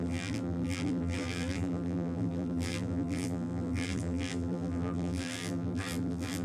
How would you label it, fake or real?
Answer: fake